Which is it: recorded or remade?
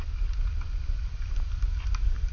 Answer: recorded